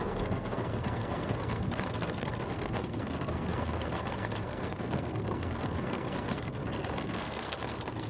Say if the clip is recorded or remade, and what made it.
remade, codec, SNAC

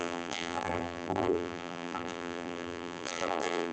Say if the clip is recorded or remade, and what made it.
remade, vocoder, BigVGAN v2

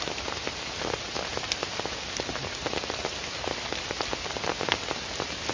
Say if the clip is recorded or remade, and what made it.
recorded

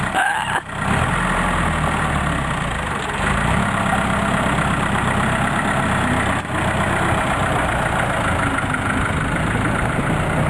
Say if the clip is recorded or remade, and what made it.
recorded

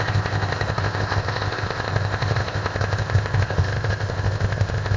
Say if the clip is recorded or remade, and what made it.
remade, codec, ZipCodec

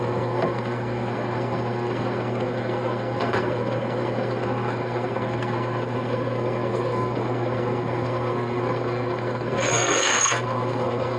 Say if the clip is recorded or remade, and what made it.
remade, codec, SNAC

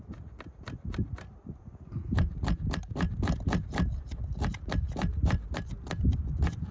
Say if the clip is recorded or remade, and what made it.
recorded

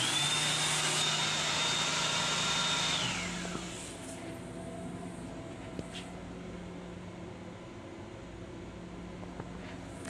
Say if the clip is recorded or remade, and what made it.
recorded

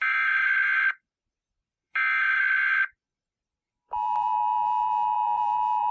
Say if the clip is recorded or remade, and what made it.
remade, vocoder, BigVGAN v2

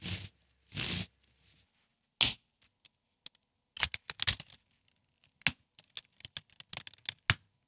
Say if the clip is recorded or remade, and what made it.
recorded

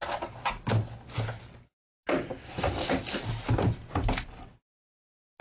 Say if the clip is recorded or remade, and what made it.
recorded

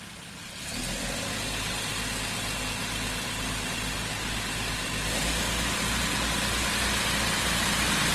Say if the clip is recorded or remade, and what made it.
recorded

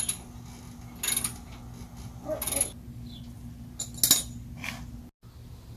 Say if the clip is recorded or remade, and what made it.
recorded